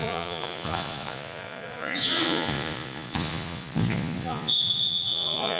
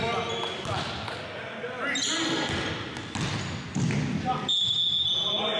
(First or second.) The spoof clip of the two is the first